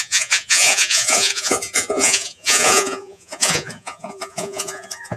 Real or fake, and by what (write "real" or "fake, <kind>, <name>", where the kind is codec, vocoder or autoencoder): fake, vocoder, Vocos